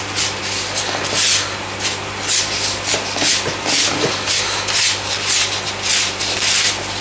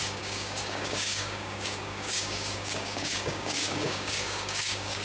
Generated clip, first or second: second